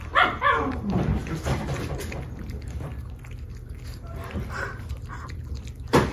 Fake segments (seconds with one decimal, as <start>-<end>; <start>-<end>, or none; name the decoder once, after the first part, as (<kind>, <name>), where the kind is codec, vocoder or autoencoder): none